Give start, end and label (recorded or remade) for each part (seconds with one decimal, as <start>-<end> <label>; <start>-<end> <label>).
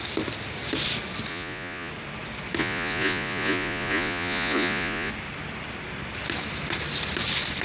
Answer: 0.0-1.3 recorded; 1.3-1.9 remade; 1.9-2.6 recorded; 2.6-5.1 remade; 5.1-7.6 recorded